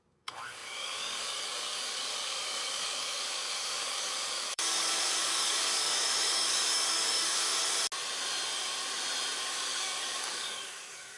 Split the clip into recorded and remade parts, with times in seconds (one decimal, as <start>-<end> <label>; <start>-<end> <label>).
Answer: 0.0-7.5 remade; 7.5-9.5 recorded; 9.5-11.2 remade